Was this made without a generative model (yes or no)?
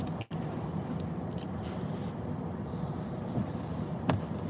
yes